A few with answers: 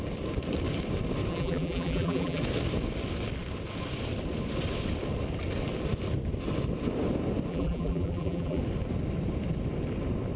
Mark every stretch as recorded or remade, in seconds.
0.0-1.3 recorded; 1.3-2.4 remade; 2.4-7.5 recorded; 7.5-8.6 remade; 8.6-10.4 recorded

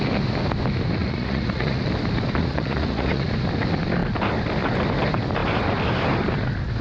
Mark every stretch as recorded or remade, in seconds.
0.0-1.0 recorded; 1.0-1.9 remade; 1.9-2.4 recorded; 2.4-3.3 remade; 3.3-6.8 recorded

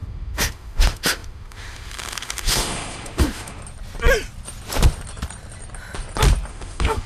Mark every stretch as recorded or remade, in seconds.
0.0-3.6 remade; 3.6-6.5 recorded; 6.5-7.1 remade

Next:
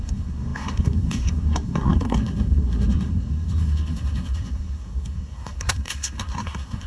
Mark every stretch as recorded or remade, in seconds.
0.0-6.9 remade

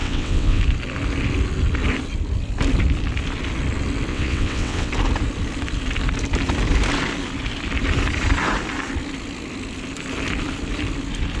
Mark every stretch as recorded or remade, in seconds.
0.0-0.6 remade; 0.6-4.1 recorded; 4.1-4.9 remade; 4.9-11.4 recorded

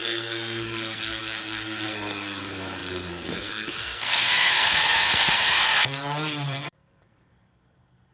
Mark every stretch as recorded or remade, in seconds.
0.0-8.1 remade

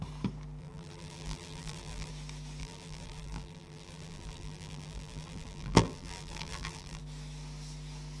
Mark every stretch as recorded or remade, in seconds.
0.0-0.6 recorded; 0.6-2.1 remade; 2.1-2.6 recorded; 2.6-7.0 remade; 7.0-8.2 recorded

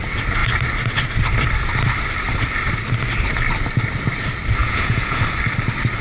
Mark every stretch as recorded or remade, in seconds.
0.0-4.6 recorded; 4.6-5.2 remade; 5.2-6.0 recorded